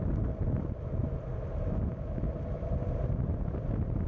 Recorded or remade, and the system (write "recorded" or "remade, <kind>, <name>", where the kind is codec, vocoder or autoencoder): recorded